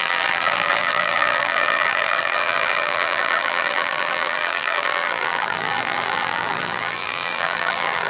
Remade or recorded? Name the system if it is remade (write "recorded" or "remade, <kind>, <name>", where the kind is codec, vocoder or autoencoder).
remade, vocoder, BigVGAN v2